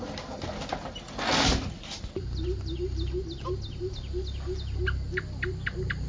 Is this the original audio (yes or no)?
yes